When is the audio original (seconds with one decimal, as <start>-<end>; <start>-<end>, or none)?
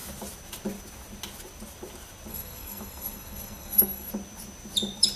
0.0-2.3; 4.1-5.2